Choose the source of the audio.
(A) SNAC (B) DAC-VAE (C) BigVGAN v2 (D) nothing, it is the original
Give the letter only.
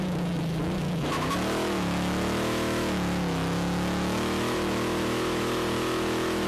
B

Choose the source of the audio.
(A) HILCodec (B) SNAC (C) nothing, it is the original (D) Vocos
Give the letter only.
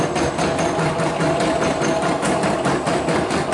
C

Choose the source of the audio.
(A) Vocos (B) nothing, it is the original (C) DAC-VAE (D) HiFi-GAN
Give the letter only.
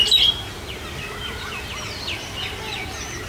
B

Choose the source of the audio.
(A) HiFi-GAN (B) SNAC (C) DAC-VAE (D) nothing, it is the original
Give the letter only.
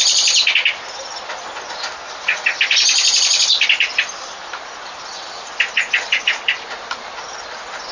D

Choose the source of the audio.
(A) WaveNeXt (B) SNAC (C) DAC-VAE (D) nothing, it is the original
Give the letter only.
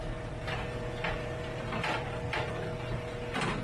D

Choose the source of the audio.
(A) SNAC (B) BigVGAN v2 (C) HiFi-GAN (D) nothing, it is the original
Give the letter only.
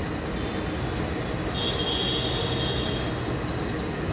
D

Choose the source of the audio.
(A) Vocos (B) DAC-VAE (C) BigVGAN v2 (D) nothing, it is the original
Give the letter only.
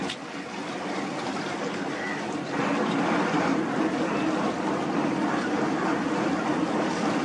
C